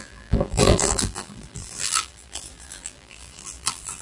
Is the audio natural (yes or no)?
no